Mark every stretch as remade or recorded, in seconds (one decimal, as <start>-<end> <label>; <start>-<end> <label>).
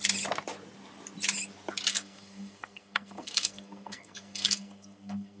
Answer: 0.0-1.9 recorded; 1.9-5.4 remade